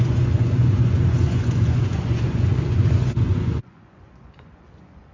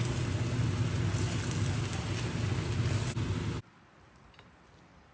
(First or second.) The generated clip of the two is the first